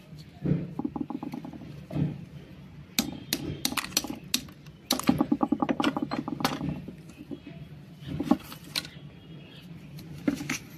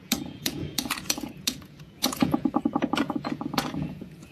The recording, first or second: first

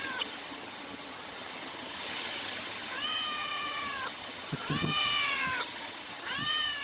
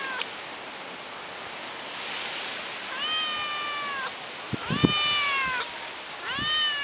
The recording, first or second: second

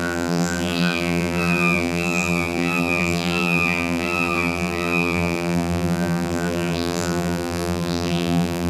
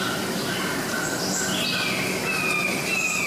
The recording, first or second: second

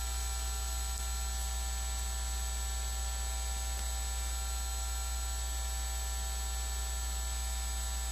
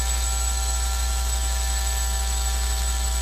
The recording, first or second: first